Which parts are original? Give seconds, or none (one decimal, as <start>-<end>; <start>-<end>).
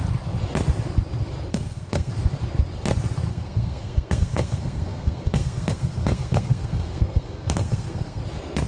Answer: 0.0-1.5; 2.1-3.3; 8.2-8.7